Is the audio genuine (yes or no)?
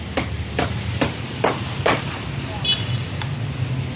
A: yes